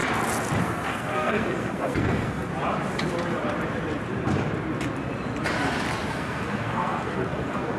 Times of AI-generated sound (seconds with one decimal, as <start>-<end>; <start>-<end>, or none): 0.6-2.5; 6.1-7.8